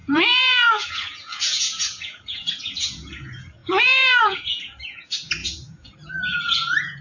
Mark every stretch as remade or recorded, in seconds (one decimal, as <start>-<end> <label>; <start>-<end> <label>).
0.0-7.0 remade